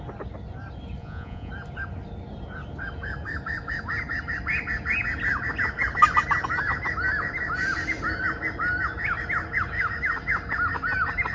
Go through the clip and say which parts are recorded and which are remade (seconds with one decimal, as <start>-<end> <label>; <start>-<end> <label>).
0.0-1.0 recorded; 1.0-1.5 remade; 1.5-11.3 recorded